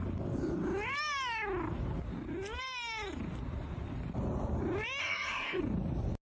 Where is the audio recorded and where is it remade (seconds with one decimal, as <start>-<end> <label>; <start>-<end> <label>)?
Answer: 0.0-5.0 recorded; 5.0-5.6 remade; 5.6-6.2 recorded